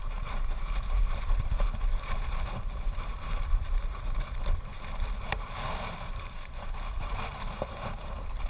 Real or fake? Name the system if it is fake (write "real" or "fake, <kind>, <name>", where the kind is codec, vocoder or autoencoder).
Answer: fake, vocoder, BigVGAN v2